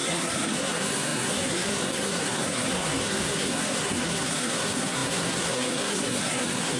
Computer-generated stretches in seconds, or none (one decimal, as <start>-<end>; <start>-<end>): 0.0-6.8